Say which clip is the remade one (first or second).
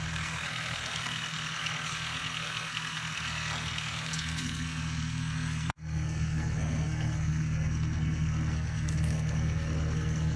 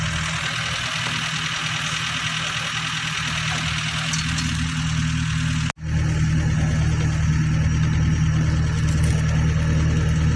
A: first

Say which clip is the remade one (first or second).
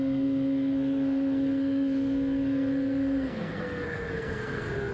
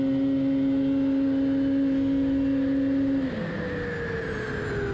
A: first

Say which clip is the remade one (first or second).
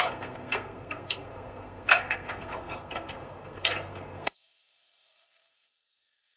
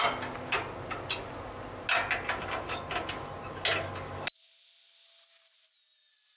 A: first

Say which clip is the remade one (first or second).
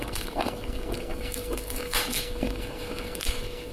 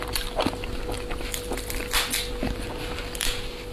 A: first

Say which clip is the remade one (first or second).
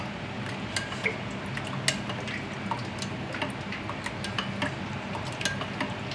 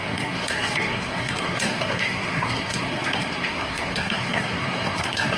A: second